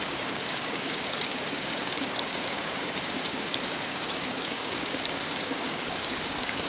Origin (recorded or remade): remade